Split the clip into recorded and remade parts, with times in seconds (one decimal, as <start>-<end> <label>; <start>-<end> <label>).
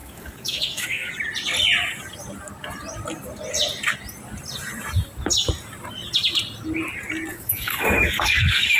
0.0-1.1 remade; 1.1-7.3 recorded; 7.3-8.8 remade